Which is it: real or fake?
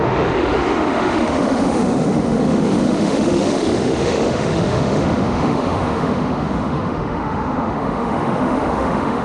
fake